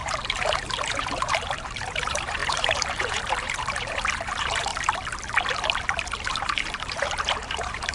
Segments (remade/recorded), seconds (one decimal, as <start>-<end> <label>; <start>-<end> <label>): 0.0-4.7 remade; 4.7-6.3 recorded; 6.3-7.9 remade